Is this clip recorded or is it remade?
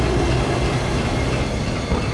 recorded